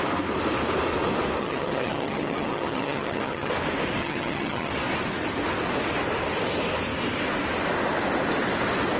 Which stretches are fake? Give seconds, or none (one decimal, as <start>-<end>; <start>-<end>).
1.4-3.5; 4.0-4.7